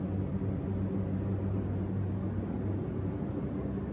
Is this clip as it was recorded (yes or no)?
yes